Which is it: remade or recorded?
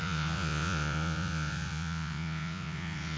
remade